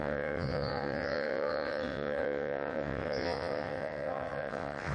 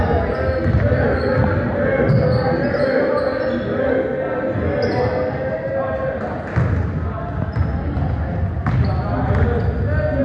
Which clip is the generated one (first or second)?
first